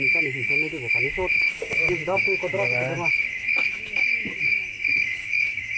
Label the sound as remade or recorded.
remade